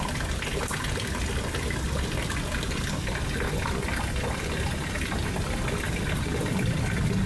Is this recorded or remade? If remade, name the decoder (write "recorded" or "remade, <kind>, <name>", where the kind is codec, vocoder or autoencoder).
recorded